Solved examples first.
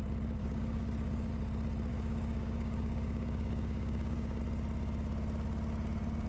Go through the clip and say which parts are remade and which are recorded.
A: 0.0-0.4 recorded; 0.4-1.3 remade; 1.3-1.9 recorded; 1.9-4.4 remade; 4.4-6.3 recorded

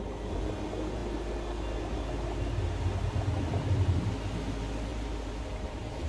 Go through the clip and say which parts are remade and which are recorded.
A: 0.0-4.9 recorded; 4.9-6.1 remade

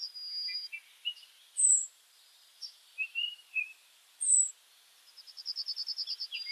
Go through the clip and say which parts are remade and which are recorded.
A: 0.0-1.8 recorded; 1.8-4.5 remade; 4.5-6.5 recorded

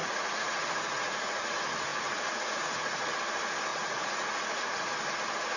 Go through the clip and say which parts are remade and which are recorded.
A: 0.0-1.4 remade; 1.4-1.9 recorded; 1.9-3.1 remade; 3.1-3.7 recorded; 3.7-4.9 remade; 4.9-5.6 recorded

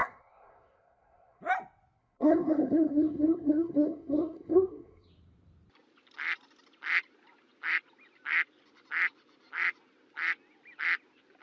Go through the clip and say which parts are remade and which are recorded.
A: 0.0-1.4 remade; 1.4-2.0 recorded; 2.0-5.1 remade; 5.1-11.4 recorded

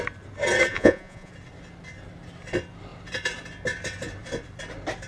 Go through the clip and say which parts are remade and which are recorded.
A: 0.0-0.7 recorded; 0.7-1.3 remade; 1.3-5.1 recorded

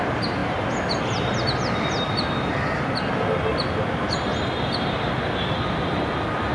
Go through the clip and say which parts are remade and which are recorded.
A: 0.0-6.5 recorded